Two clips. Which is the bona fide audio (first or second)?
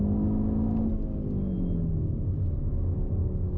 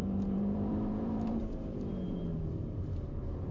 first